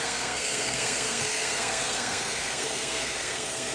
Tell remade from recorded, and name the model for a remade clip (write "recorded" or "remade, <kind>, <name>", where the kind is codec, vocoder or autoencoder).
remade, codec, SNAC